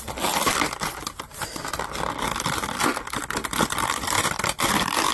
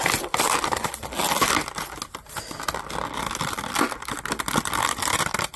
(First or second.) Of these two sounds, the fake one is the first